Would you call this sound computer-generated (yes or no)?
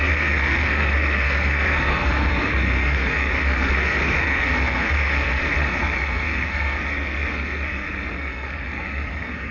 yes